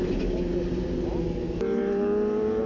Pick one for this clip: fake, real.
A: real